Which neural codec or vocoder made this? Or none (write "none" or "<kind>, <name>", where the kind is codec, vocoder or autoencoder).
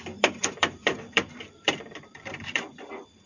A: vocoder, BigVGAN v2